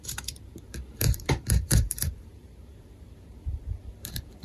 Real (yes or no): no